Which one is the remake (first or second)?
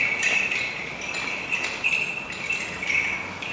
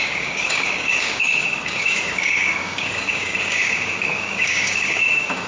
second